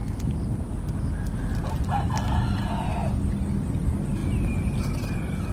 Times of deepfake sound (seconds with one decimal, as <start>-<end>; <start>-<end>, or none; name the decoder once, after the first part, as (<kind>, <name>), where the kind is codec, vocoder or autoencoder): none